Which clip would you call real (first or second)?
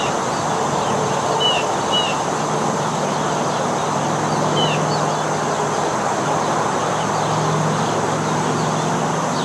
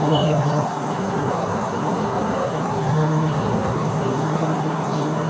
first